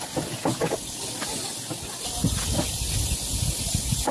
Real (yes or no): yes